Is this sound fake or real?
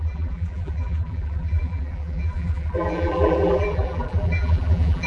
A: fake